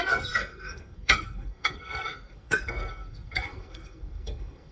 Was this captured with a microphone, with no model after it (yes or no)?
no